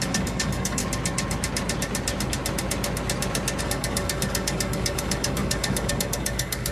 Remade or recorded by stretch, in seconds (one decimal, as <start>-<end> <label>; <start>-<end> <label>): 0.0-0.8 remade; 0.8-3.6 recorded; 3.6-6.7 remade